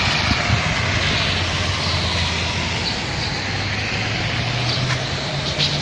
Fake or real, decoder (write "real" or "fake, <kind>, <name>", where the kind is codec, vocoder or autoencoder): real